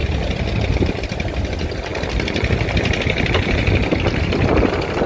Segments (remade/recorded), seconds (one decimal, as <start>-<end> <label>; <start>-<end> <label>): 0.0-5.1 recorded